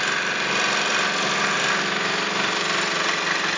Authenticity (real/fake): real